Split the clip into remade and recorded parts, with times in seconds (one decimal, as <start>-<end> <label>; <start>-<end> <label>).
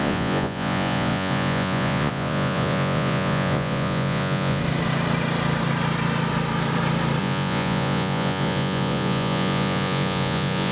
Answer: 0.0-4.6 remade; 4.6-7.2 recorded; 7.2-10.7 remade